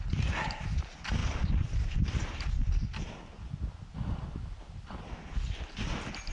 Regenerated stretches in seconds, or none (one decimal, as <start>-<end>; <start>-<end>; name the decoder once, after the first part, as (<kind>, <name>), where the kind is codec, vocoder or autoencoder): none